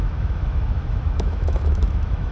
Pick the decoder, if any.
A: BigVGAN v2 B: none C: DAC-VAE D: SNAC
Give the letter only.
C